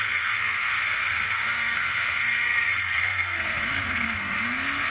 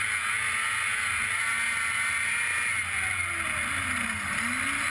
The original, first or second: second